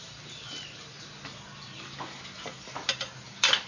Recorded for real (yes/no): yes